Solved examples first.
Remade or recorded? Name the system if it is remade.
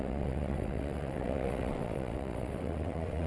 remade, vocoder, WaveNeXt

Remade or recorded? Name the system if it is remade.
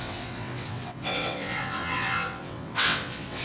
remade, vocoder, WaveNeXt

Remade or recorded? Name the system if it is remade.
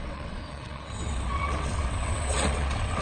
remade, vocoder, WaveNeXt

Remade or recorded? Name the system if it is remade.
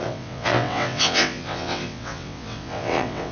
remade, vocoder, WaveNeXt